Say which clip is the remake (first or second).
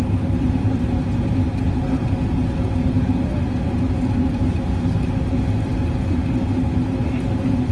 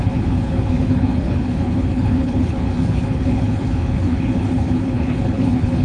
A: second